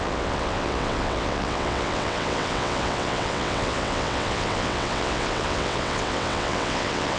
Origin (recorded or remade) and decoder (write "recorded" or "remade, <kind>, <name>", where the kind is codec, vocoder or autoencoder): remade, vocoder, WaveNeXt